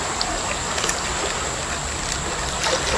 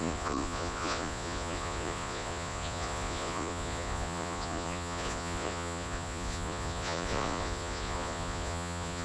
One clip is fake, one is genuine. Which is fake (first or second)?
second